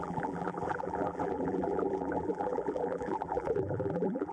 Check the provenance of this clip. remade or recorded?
remade